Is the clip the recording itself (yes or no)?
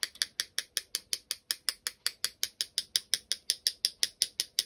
yes